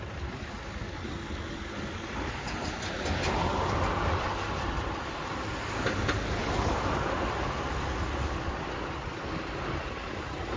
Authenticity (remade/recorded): recorded